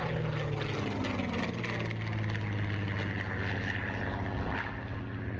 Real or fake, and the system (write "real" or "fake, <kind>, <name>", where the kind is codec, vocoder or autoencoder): real